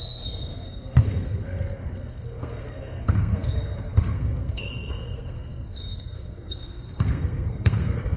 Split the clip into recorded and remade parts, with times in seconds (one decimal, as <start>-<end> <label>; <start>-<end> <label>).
0.0-8.2 remade